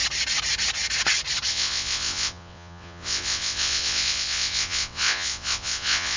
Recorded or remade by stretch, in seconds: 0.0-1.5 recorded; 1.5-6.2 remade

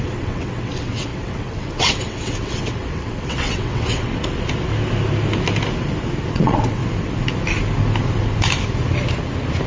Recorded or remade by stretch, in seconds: 0.0-4.1 remade; 4.1-6.3 recorded; 6.3-6.8 remade; 6.8-9.7 recorded

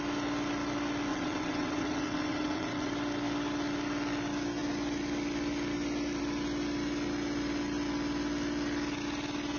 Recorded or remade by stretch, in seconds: 0.0-1.1 recorded; 1.1-2.9 remade; 2.9-9.6 recorded